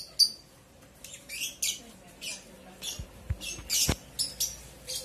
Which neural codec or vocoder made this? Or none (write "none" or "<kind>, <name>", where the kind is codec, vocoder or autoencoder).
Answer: none